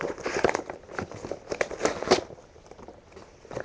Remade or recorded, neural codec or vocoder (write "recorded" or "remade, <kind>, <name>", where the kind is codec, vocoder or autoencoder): recorded